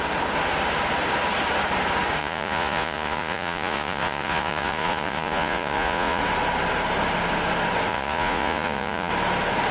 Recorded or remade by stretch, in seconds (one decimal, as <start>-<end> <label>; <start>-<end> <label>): 0.0-2.2 recorded; 2.2-6.2 remade; 6.2-7.9 recorded; 7.9-9.1 remade; 9.1-9.7 recorded